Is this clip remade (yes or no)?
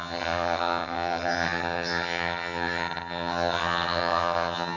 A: yes